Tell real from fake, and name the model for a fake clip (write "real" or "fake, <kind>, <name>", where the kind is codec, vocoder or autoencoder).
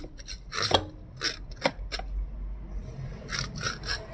real